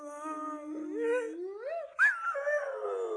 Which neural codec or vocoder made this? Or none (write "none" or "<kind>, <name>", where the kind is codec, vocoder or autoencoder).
none